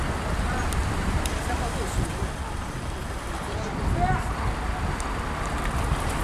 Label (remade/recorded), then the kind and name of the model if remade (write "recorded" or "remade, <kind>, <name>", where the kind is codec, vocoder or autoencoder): recorded